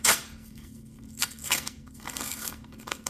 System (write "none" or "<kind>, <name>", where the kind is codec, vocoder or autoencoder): codec, SNAC